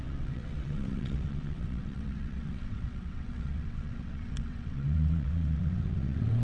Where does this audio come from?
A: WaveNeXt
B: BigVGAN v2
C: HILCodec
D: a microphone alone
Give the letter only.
A